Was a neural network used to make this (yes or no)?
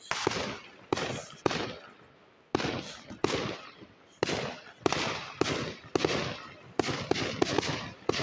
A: no